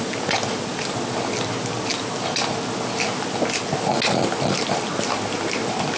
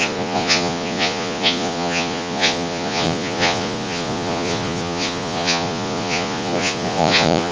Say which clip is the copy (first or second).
second